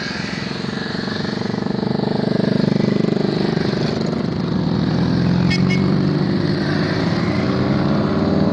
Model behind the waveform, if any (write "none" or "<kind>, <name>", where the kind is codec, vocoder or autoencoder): none